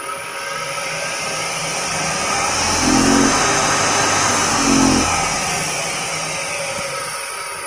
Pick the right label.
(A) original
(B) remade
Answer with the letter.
A